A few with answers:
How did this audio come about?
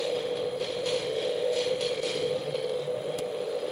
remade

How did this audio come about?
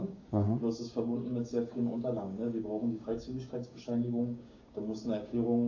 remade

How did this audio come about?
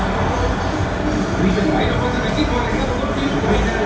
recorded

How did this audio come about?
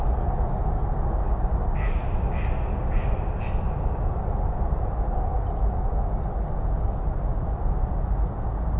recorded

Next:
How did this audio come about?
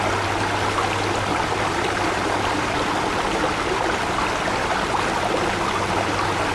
recorded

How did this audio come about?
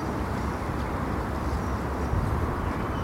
recorded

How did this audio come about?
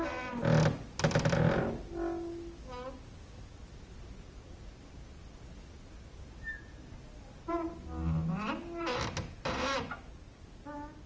recorded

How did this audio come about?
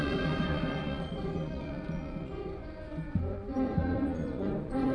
remade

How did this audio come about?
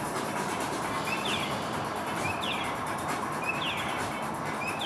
remade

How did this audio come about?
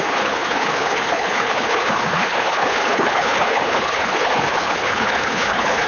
remade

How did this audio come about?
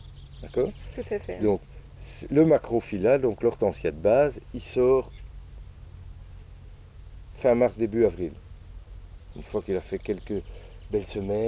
recorded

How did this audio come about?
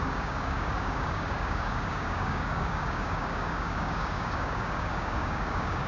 remade